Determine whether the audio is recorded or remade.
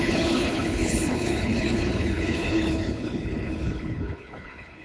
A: remade